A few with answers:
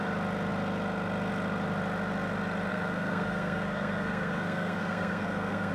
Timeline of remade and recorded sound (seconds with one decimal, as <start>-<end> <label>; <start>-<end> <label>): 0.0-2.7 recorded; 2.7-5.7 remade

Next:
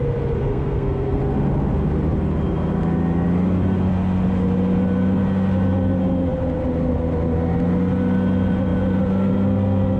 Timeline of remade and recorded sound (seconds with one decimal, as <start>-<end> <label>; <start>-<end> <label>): 0.0-0.5 recorded; 0.5-1.2 remade; 1.2-10.0 recorded

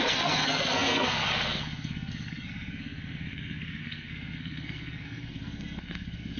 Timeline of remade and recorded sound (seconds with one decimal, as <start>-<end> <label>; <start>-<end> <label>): 0.0-6.4 remade